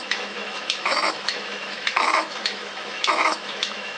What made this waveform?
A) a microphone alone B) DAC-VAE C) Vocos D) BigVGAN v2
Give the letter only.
B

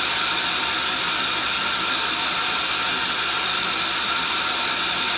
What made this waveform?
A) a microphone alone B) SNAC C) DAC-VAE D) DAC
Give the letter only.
A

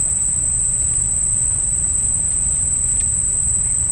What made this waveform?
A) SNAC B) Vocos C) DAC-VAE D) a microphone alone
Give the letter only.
D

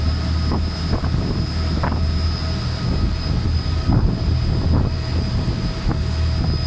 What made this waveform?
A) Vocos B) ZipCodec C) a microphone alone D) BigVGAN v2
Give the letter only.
C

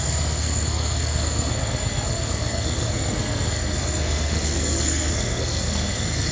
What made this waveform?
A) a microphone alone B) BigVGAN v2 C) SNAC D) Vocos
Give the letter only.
C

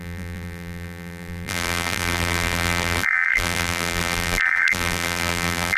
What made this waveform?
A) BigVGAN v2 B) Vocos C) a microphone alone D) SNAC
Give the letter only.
A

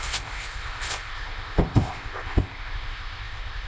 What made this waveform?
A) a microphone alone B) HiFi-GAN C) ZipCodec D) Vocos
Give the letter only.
C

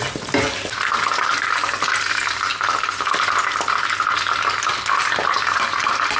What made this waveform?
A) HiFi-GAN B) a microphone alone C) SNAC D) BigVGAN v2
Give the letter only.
B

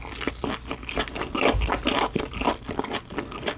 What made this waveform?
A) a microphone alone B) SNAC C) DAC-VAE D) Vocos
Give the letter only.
A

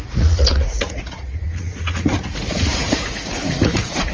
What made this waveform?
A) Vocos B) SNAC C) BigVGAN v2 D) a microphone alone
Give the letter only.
A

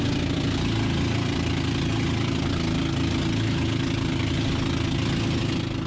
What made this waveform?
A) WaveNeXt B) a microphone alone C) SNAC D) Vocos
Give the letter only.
B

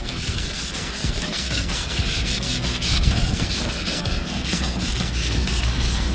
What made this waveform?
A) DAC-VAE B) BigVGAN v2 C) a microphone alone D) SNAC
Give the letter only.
D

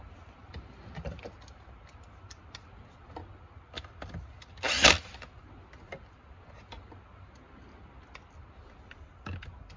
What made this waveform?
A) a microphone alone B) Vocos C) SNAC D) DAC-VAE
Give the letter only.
A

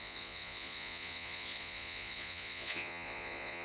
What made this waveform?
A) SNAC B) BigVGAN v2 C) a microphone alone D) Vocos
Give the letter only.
D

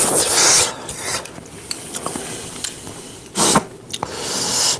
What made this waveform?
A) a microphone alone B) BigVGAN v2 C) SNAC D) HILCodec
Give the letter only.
A